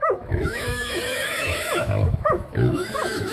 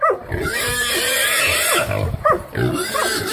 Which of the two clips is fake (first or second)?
first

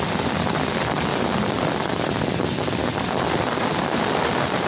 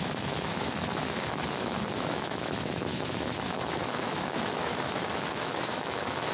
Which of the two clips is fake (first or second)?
second